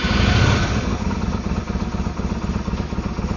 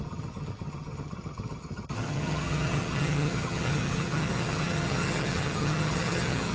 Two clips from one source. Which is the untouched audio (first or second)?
first